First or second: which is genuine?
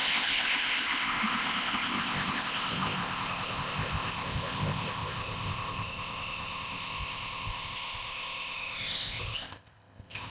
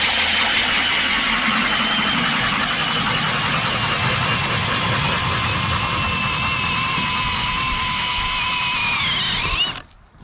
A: second